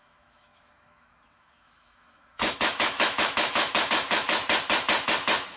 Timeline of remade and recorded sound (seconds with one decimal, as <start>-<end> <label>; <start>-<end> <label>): 0.0-4.4 remade; 4.4-5.6 recorded